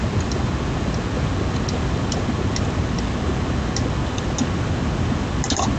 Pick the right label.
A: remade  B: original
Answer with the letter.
B